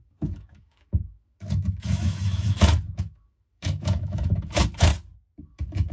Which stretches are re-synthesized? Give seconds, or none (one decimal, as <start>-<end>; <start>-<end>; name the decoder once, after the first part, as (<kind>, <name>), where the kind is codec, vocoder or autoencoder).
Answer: 0.0-4.9 (autoencoder, DAC-VAE); 5.4-5.9